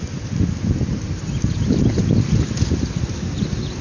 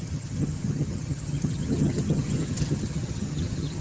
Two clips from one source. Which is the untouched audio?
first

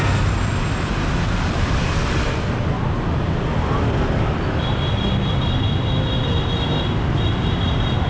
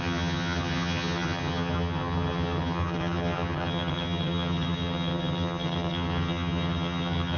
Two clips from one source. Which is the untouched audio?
first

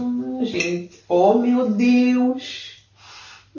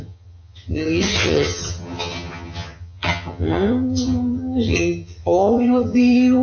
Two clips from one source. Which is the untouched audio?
first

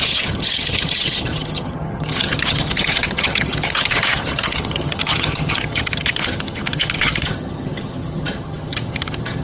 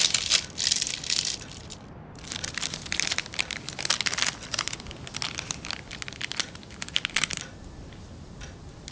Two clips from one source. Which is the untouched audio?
second